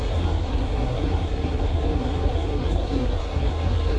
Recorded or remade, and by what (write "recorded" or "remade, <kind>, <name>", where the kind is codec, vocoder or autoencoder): remade, codec, SNAC